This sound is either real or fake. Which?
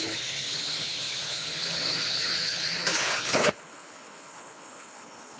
fake